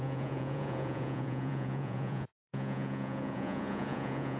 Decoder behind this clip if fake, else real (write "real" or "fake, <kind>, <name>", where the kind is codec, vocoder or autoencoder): fake, vocoder, Vocos